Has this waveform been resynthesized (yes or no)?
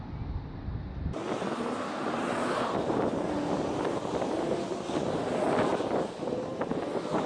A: no